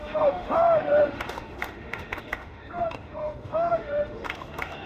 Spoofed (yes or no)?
yes